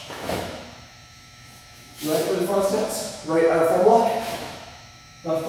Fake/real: fake